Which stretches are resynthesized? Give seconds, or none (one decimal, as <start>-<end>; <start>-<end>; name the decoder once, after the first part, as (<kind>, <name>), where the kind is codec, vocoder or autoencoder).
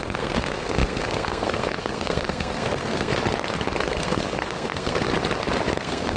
0.0-3.1 (codec, SNAC); 3.8-5.1; 5.8-6.2